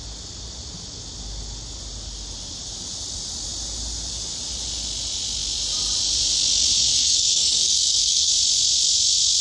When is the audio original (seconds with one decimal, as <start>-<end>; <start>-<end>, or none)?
0.0-6.9; 8.3-9.4